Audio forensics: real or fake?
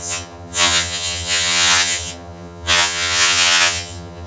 fake